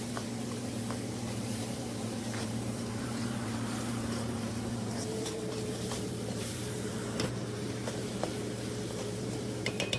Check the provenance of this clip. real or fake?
fake